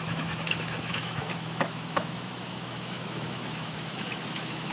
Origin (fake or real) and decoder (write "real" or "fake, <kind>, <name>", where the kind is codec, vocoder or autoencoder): fake, autoencoder, DAC-VAE